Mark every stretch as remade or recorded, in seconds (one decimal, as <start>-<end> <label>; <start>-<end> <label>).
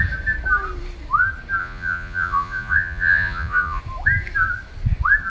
0.0-1.6 recorded; 1.6-3.8 remade; 3.8-5.3 recorded